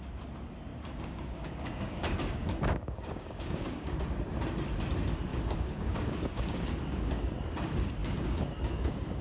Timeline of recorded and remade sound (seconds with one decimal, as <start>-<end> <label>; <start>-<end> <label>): 0.0-0.7 recorded; 0.7-4.0 remade; 4.0-5.3 recorded; 5.3-7.3 remade; 7.3-8.0 recorded; 8.0-9.2 remade